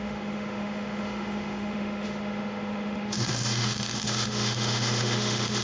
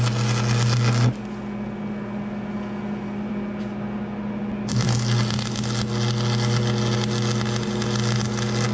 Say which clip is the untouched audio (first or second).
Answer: second